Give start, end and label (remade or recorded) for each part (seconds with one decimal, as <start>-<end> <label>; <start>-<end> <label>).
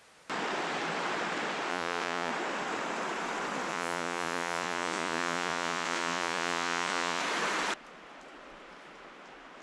0.0-1.7 recorded; 1.7-2.3 remade; 2.3-3.7 recorded; 3.7-7.2 remade; 7.2-9.6 recorded